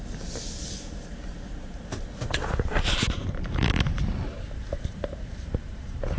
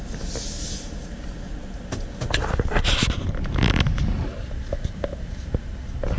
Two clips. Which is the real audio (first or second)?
second